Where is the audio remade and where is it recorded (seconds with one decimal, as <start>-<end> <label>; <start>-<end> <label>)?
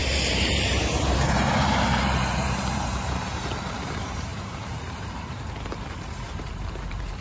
0.0-7.2 remade